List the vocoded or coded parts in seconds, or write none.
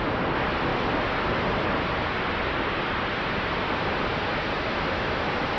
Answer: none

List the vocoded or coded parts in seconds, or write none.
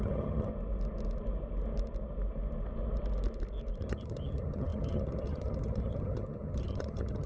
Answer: 0.0-0.5 (vocoder, HiFi-GAN); 3.8-7.3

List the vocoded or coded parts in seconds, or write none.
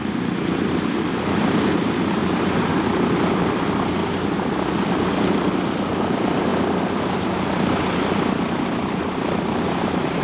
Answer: 4.0-4.6 (vocoder, BigVGAN v2)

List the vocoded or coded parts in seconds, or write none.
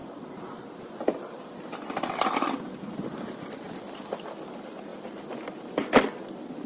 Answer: none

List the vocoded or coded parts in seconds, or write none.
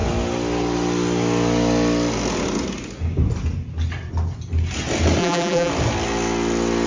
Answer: 5.2-5.7 (vocoder, BigVGAN v2)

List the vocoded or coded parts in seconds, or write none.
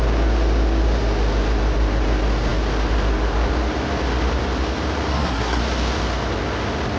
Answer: 5.1-5.6 (codec, SNAC)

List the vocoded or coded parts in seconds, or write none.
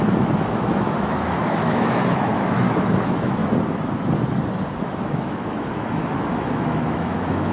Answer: 0.0-3.4 (autoencoder, DAC-VAE); 4.8-7.5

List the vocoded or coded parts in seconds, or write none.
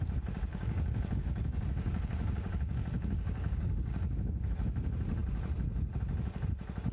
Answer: 0.5-4.5 (codec, DAC)